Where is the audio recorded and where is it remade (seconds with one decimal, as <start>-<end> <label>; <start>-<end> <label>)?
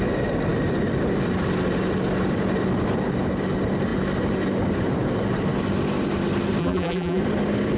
0.0-6.6 recorded; 6.6-7.2 remade; 7.2-7.8 recorded